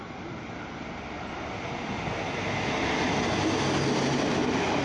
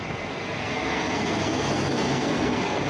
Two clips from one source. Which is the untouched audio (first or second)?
first